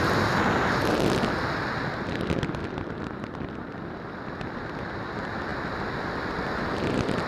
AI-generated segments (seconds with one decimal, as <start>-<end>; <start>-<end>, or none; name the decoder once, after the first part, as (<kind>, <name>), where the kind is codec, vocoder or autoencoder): 2.6-3.5 (vocoder, BigVGAN v2)